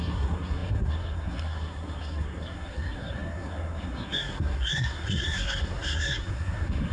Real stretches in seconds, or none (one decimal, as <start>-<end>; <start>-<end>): none